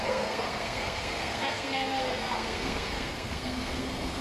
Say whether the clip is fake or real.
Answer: fake